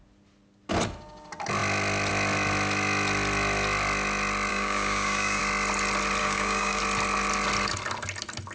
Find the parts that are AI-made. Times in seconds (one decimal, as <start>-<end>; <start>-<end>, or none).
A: 4.5-5.4; 6.2-6.8